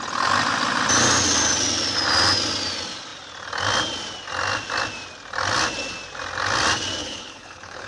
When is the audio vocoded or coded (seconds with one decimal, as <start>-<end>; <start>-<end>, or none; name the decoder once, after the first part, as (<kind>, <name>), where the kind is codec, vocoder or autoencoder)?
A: 7.0-7.9 (codec, HILCodec)